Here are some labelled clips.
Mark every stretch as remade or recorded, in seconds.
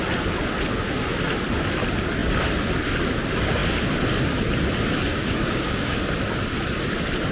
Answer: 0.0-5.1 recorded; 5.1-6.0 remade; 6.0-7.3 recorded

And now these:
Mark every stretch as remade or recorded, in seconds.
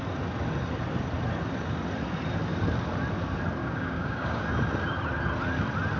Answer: 0.0-3.6 recorded; 3.6-4.4 remade; 4.4-6.0 recorded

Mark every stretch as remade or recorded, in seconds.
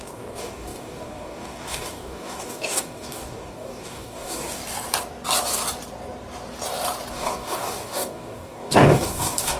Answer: 0.0-4.6 remade; 4.6-7.1 recorded; 7.1-9.6 remade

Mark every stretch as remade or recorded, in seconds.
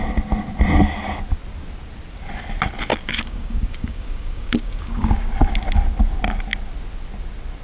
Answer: 0.0-2.9 recorded; 2.9-5.3 remade; 5.3-7.6 recorded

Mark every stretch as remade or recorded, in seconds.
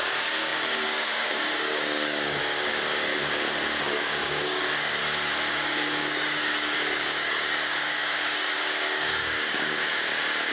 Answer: 0.0-3.1 remade; 3.1-3.8 recorded; 3.8-5.0 remade; 5.0-5.5 recorded; 5.5-10.5 remade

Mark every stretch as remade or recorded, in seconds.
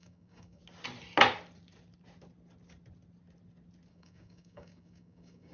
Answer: 0.0-0.6 remade; 0.6-3.9 recorded; 3.9-5.5 remade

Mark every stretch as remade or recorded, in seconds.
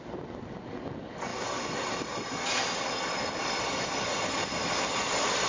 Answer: 0.0-5.5 recorded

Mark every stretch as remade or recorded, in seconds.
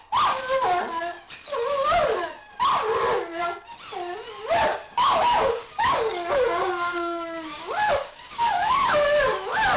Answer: 0.0-4.7 recorded; 4.7-9.3 remade; 9.3-9.8 recorded